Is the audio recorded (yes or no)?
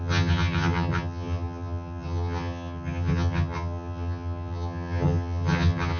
no